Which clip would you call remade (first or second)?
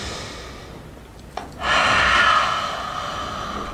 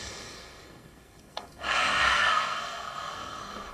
second